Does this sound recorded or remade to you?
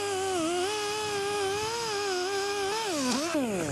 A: recorded